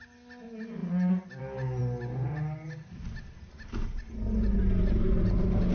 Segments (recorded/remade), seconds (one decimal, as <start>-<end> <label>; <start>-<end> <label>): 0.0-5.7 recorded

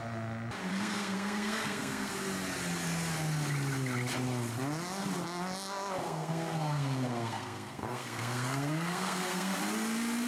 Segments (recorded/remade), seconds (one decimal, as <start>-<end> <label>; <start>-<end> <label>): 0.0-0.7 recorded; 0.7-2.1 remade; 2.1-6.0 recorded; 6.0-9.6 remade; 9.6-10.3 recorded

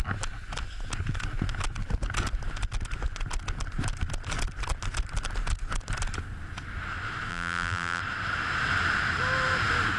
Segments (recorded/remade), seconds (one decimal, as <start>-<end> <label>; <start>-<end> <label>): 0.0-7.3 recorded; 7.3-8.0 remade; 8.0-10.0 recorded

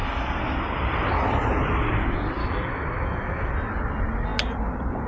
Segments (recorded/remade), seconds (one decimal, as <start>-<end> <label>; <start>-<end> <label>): 0.0-2.4 recorded; 2.4-3.5 remade; 3.5-5.1 recorded

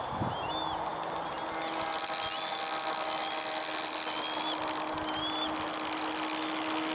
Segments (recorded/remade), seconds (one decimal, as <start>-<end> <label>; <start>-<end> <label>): 0.0-6.9 recorded

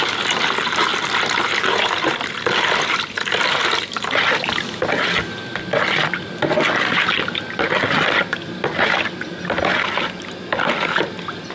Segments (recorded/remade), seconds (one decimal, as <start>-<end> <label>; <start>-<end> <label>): 0.0-11.5 recorded

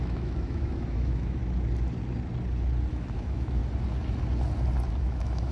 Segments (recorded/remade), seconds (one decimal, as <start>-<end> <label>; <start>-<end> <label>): 0.0-1.4 remade; 1.4-2.9 recorded; 2.9-3.6 remade; 3.6-5.0 recorded; 5.0-5.5 remade

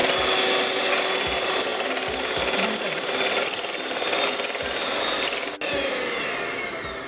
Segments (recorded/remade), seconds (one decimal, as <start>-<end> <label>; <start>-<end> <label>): 0.0-7.1 recorded